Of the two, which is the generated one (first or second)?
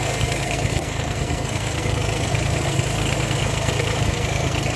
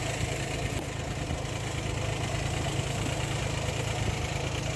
first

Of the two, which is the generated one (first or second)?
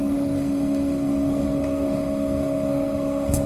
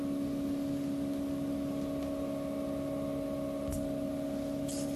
first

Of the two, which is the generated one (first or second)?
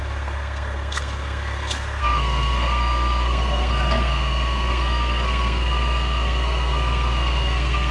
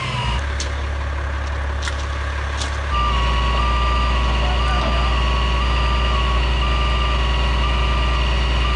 first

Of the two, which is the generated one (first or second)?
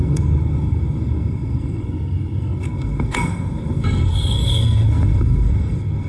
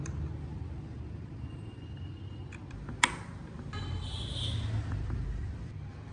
first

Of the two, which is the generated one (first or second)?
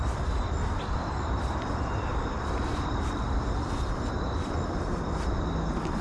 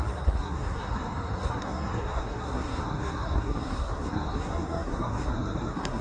second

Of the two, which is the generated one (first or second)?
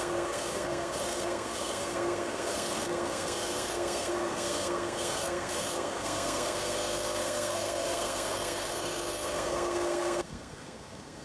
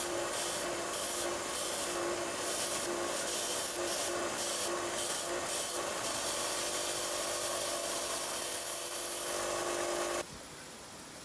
first